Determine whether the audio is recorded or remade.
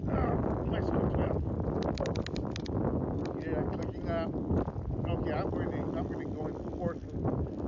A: recorded